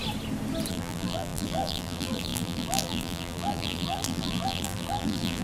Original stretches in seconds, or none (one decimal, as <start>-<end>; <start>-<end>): 0.0-0.7

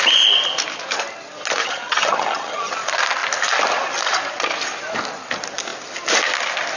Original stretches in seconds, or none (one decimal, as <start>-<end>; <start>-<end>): 0.0-1.6; 2.7-6.8

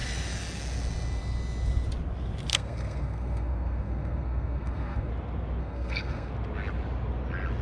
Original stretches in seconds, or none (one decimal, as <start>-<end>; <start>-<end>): 0.0-2.5; 5.1-5.6; 6.3-7.6

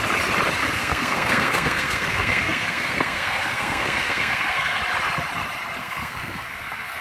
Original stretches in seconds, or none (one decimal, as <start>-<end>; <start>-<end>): 0.0-0.6; 4.8-5.8

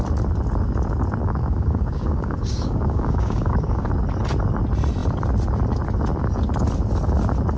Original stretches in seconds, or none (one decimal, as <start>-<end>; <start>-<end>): 0.0-1.2; 3.9-7.6

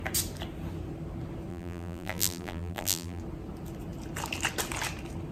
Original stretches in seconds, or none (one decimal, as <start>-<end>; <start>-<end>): 0.0-1.5; 3.2-5.3